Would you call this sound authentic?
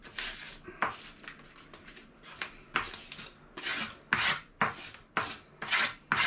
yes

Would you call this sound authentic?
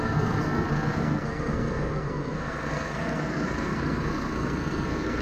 no